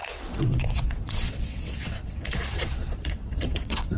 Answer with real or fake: fake